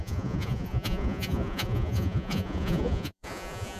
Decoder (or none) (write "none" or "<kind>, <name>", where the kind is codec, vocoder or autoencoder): vocoder, Vocos